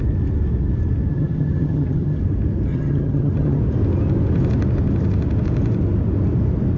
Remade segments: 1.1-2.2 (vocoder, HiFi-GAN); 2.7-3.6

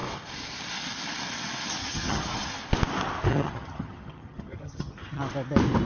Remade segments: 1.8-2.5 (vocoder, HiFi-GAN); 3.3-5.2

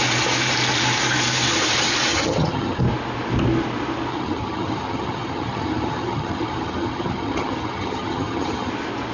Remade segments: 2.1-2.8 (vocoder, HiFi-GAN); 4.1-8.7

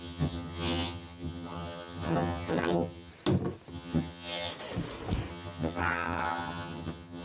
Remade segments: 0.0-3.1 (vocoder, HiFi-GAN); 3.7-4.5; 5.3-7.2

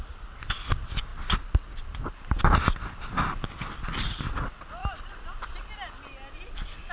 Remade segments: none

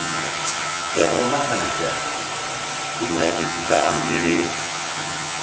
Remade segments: 0.0-1.2 (vocoder, HiFi-GAN); 3.1-5.4